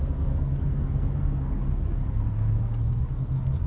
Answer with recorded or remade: remade